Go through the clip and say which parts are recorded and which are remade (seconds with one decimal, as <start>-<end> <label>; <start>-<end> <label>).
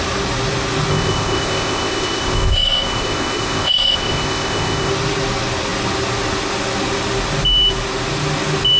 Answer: 0.0-0.9 recorded; 0.9-4.9 remade; 4.9-8.8 recorded